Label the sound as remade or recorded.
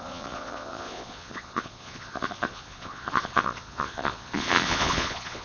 remade